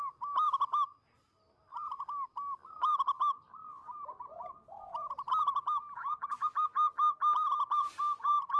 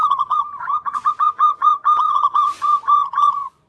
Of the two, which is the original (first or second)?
first